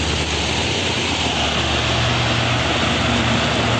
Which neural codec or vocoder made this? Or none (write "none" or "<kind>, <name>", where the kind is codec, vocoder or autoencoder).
none